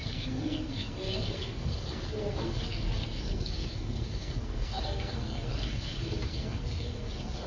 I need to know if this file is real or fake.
fake